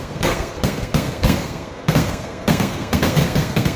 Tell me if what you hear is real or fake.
fake